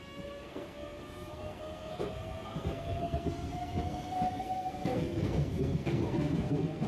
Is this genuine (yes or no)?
no